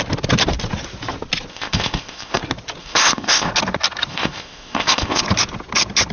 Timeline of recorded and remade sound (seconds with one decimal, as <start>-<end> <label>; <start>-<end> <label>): 0.0-1.5 recorded; 1.5-2.4 remade; 2.4-2.8 recorded; 2.8-3.5 remade; 3.5-4.1 recorded; 4.1-5.2 remade; 5.2-6.1 recorded